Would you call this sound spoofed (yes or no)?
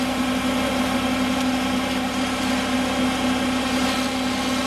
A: no